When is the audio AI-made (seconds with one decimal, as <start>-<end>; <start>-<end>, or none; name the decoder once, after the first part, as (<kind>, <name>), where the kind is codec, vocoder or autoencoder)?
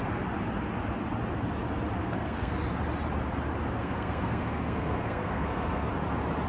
2.0-2.5 (codec, SNAC); 3.8-5.9